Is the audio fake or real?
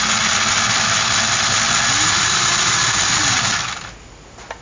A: real